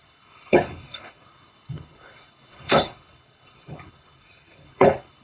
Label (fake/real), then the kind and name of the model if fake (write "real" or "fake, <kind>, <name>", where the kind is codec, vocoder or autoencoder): fake, codec, HILCodec